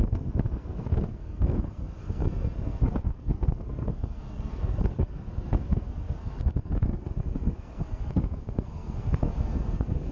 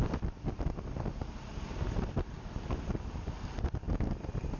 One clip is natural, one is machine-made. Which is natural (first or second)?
second